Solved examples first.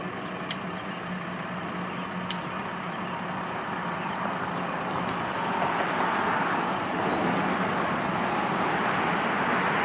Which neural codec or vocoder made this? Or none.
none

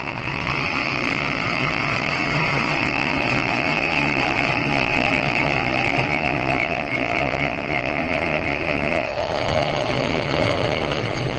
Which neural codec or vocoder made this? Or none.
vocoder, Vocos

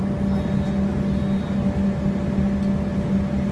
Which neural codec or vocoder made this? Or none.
none